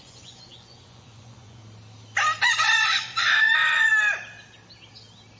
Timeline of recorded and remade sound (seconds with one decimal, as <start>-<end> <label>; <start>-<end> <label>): 0.0-1.6 remade; 1.6-2.4 recorded; 2.4-3.9 remade; 3.9-5.4 recorded